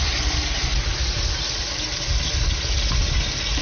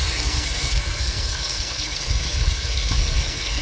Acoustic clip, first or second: first